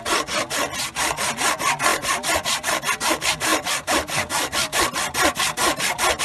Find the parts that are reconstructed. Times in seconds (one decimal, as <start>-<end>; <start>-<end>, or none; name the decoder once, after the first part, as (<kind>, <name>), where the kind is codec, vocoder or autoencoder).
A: none